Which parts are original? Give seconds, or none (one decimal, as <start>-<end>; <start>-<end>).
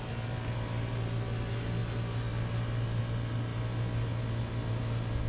0.0-5.3